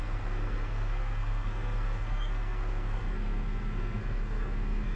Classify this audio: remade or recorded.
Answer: remade